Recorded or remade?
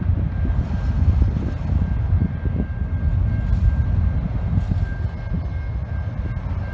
recorded